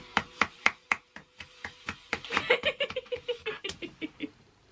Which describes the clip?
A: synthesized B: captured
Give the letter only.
A